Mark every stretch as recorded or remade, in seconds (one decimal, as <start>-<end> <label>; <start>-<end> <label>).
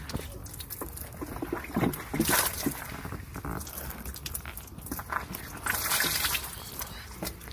0.0-7.5 recorded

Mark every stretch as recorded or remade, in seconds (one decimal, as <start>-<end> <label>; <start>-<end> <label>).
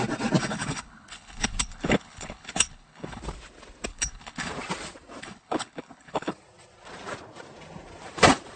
0.0-0.4 recorded; 0.4-3.2 remade; 3.2-3.9 recorded; 3.9-4.5 remade; 4.5-5.2 recorded; 5.2-6.3 remade; 6.3-8.6 recorded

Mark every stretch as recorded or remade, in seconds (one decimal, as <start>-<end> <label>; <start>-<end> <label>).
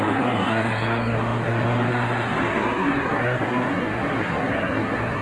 0.0-5.2 remade